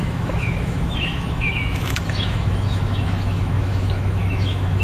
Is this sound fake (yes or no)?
yes